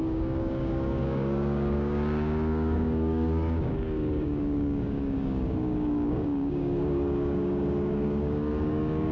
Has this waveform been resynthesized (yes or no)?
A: yes